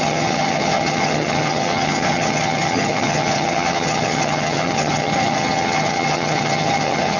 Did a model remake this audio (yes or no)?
yes